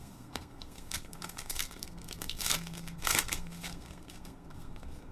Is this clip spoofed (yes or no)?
yes